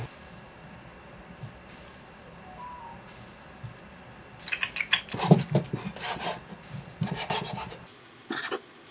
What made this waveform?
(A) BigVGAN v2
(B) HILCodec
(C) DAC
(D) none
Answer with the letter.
D